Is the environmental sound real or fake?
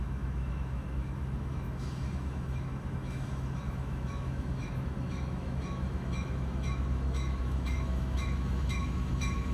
fake